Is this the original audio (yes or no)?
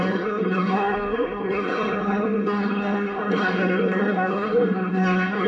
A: no